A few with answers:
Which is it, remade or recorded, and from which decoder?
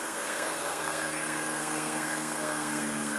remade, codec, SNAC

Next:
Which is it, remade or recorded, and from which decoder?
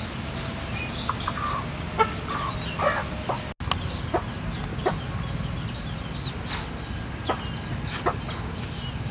recorded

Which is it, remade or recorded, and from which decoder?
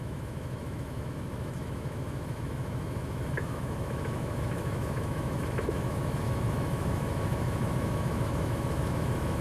remade, autoencoder, DAC-VAE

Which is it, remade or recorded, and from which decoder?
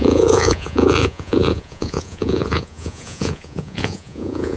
remade, vocoder, Vocos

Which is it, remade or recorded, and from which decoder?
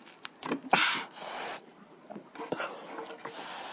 recorded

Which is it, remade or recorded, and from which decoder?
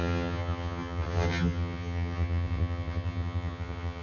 remade, vocoder, HiFi-GAN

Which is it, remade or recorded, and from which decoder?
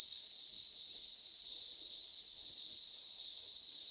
remade, codec, DAC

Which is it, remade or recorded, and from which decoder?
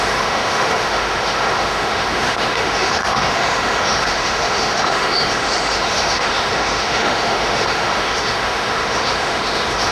remade, autoencoder, DAC-VAE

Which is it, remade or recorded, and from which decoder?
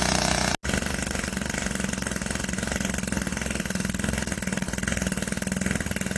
recorded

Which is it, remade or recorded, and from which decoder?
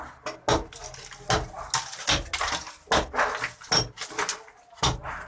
recorded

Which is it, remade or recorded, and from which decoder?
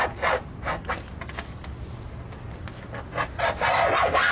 recorded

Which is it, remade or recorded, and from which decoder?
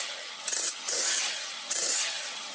remade, vocoder, HiFi-GAN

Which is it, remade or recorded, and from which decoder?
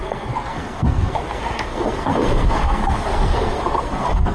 remade, codec, SNAC